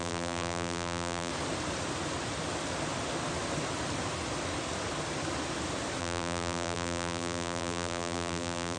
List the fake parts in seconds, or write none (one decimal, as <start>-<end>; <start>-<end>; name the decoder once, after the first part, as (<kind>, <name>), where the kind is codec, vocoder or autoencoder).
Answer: 0.0-1.3 (vocoder, BigVGAN v2); 6.0-8.8